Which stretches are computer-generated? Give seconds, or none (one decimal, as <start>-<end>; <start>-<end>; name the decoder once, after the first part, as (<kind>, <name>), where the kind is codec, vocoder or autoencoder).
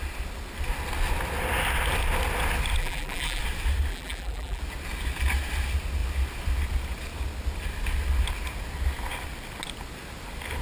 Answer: 2.8-3.4 (vocoder, BigVGAN v2); 3.9-4.6